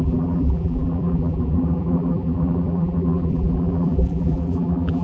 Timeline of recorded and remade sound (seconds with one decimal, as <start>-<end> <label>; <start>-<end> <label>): 0.0-5.0 remade